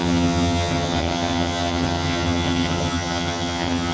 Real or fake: fake